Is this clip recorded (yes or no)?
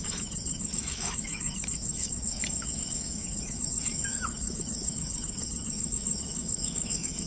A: no